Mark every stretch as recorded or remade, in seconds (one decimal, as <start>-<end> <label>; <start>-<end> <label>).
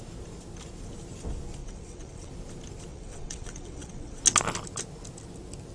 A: 0.0-1.6 recorded; 1.6-2.3 remade; 2.3-2.9 recorded; 2.9-4.2 remade; 4.2-5.7 recorded